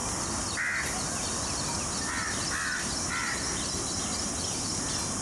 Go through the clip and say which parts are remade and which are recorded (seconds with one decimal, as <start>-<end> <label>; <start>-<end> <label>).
0.0-5.2 recorded